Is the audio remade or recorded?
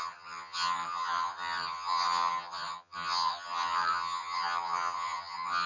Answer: remade